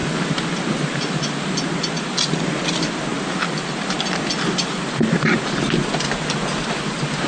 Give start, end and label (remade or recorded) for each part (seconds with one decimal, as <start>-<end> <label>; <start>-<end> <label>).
0.0-7.3 recorded